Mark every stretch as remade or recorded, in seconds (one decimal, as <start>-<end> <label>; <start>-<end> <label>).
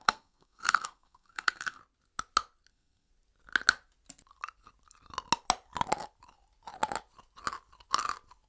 0.0-1.8 remade; 1.8-2.7 recorded; 2.7-3.1 remade; 3.1-8.5 recorded